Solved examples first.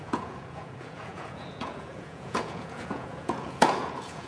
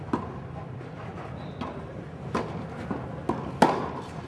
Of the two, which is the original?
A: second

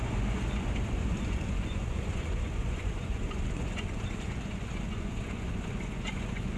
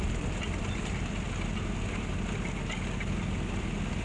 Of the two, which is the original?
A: second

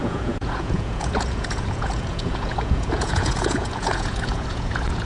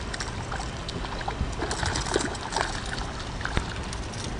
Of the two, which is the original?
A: second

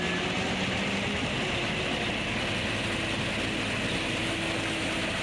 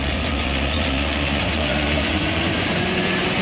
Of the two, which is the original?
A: first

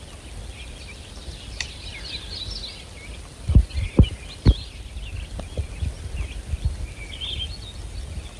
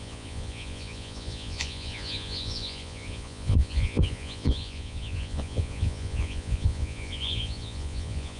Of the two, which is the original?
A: first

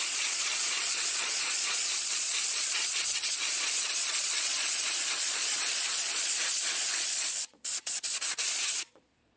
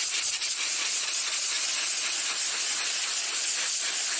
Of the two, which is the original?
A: second